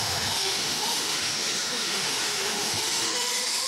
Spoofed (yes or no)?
yes